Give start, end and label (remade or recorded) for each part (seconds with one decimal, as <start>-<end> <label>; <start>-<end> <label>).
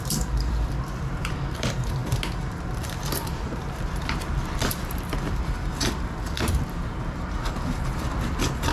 0.0-2.0 remade; 2.0-2.7 recorded; 2.7-8.7 remade